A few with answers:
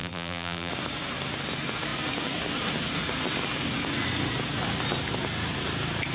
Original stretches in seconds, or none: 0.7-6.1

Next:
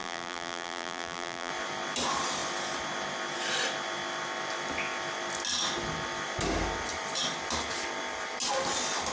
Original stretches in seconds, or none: 1.5-9.1

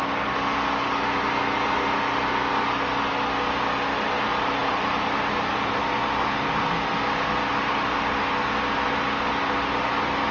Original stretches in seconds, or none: 0.0-4.6; 5.8-10.3

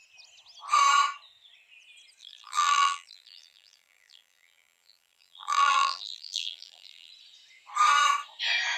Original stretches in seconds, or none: 0.0-2.2; 7.1-8.8

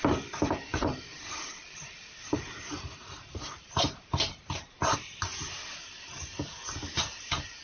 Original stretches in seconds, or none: 0.0-0.7; 4.5-7.6